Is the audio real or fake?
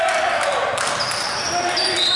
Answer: real